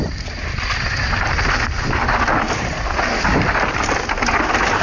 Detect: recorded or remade recorded